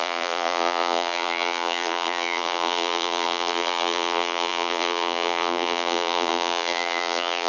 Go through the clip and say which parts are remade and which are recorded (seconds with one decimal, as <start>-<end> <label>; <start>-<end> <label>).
0.0-7.5 remade